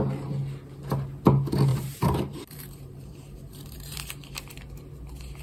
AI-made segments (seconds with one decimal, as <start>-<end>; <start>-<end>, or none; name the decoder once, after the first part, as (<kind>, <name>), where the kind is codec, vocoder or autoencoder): 1.7-4.1 (vocoder, BigVGAN v2)